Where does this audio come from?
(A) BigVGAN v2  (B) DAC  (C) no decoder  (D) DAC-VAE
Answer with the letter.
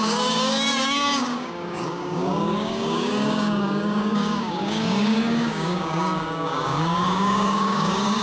B